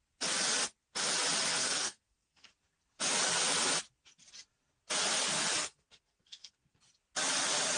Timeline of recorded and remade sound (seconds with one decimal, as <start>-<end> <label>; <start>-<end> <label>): 0.0-1.6 recorded; 1.6-2.5 remade; 2.5-5.6 recorded; 5.6-6.8 remade; 6.8-7.8 recorded